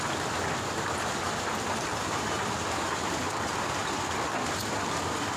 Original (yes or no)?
yes